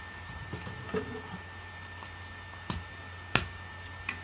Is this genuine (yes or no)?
yes